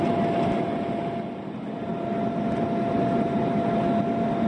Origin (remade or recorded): recorded